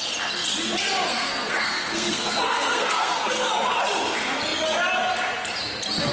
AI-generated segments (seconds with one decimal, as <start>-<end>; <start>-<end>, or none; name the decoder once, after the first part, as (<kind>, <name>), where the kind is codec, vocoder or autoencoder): 1.1-3.5 (codec, SNAC)